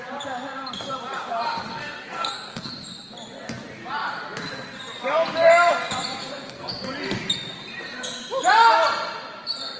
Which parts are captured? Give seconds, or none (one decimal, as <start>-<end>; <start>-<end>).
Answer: 0.0-1.7; 2.7-6.2; 6.7-9.8